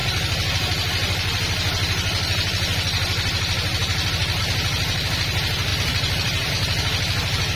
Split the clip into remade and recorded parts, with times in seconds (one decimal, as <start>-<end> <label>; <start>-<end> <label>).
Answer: 0.0-4.4 remade; 4.4-5.7 recorded; 5.7-6.5 remade; 6.5-7.6 recorded